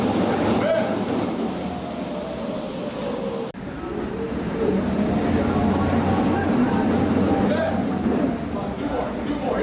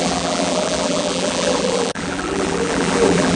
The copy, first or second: second